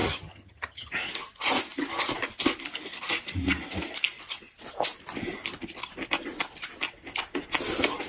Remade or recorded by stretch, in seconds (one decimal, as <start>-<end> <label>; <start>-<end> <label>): 0.0-0.9 remade; 0.9-8.1 recorded